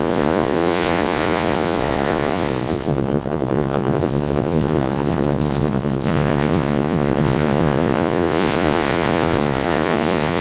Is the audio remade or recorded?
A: remade